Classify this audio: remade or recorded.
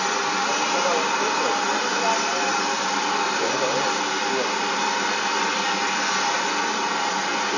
recorded